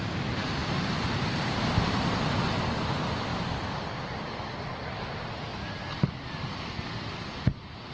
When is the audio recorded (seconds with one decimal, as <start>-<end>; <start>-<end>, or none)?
0.0-7.9